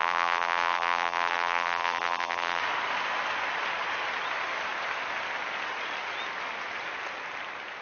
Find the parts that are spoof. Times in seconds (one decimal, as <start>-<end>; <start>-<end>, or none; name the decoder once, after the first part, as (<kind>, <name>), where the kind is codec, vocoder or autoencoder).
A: 0.0-2.6 (vocoder, BigVGAN v2)